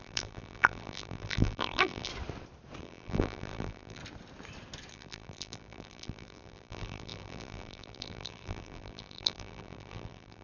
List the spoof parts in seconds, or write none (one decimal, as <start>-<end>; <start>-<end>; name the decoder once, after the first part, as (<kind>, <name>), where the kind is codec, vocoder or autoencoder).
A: 0.0-2.1 (vocoder, BigVGAN v2); 2.8-4.0; 4.9-10.4